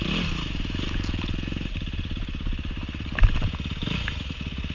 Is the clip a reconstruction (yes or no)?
no